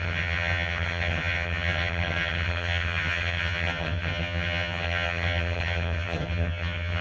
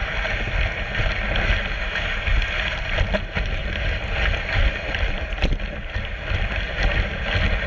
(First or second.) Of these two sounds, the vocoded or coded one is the first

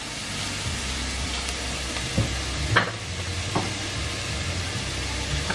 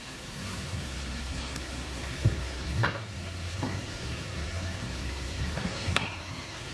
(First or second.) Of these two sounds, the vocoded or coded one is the second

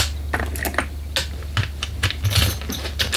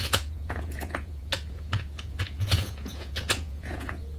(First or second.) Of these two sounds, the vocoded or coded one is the second